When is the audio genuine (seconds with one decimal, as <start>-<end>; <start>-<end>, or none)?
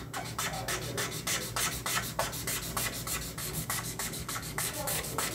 0.0-3.4